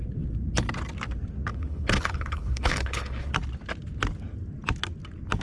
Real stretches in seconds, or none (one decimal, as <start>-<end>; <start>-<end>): 0.0-1.5; 3.3-5.4